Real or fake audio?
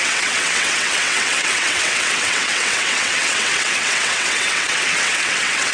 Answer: fake